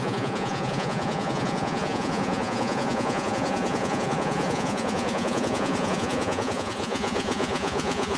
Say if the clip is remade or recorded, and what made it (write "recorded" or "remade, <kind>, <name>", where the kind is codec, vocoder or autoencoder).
remade, vocoder, Vocos